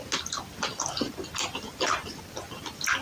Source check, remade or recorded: recorded